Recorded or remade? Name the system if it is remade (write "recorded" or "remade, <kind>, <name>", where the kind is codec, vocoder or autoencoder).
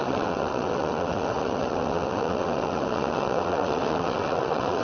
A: remade, vocoder, WaveNeXt